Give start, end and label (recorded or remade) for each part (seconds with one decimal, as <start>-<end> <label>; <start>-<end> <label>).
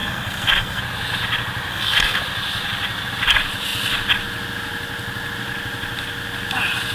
0.0-0.8 remade; 0.8-1.7 recorded; 1.7-2.2 remade; 2.2-6.9 recorded